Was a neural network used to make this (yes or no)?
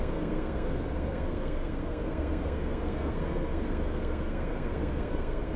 yes